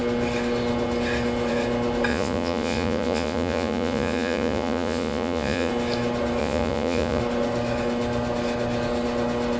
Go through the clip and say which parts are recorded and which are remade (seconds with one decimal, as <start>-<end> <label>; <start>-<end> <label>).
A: 0.0-2.1 recorded; 2.1-5.7 remade; 5.7-6.4 recorded; 6.4-7.2 remade; 7.2-9.6 recorded